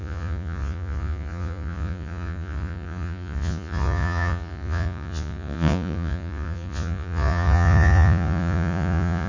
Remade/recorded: remade